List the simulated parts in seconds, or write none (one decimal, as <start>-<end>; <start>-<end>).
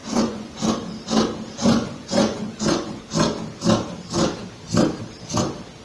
0.0-0.7; 1.6-3.0